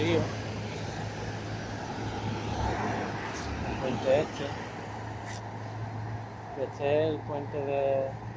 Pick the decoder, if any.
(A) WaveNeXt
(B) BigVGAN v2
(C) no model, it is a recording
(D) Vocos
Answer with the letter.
C